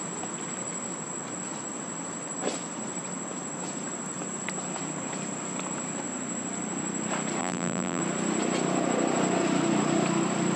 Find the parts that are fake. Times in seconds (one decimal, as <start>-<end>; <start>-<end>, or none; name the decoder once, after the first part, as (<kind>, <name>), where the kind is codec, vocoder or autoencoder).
7.4-8.0 (vocoder, BigVGAN v2)